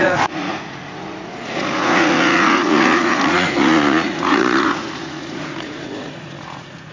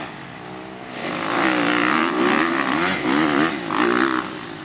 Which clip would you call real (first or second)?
second